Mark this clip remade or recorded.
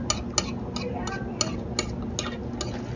recorded